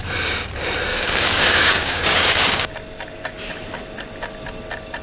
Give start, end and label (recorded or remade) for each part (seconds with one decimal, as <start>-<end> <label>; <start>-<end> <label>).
0.0-0.9 recorded; 0.9-2.7 remade; 2.7-5.0 recorded